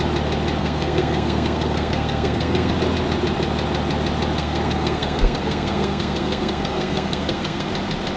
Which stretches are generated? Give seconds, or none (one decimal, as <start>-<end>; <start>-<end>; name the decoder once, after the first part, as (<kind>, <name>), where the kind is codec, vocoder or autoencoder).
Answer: 0.6-2.7 (codec, SNAC); 4.4-7.7